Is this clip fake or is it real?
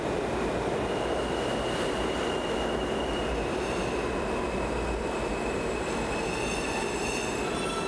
real